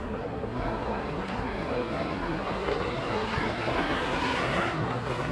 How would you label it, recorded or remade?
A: remade